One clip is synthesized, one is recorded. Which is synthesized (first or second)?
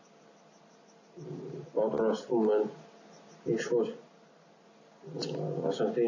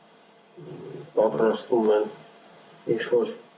second